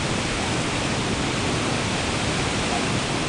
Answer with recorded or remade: recorded